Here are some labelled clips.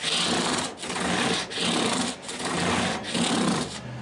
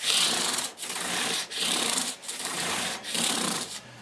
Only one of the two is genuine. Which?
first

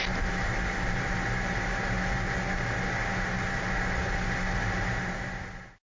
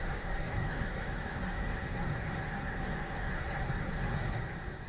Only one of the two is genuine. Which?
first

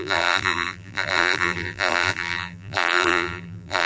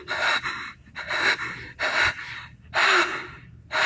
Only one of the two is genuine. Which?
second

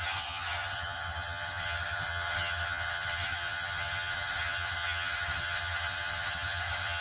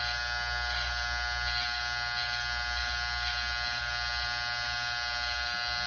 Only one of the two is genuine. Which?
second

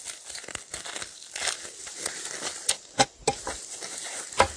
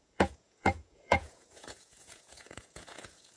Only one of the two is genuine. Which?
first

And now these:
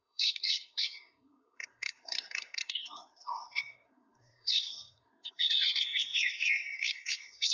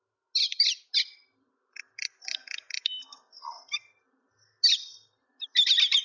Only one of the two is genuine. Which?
second